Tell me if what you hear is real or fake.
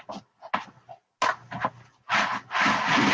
real